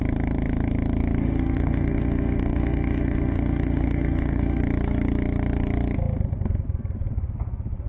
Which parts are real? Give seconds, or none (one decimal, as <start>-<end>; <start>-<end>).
0.0-1.2; 4.6-7.9